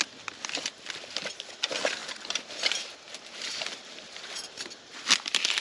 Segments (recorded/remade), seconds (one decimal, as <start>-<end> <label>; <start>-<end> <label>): 0.0-2.0 recorded; 2.0-4.9 remade; 4.9-5.6 recorded